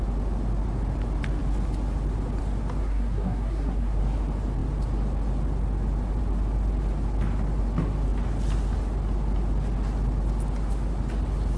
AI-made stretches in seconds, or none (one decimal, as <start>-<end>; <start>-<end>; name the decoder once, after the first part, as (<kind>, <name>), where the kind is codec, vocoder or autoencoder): 2.8-4.0 (codec, SNAC)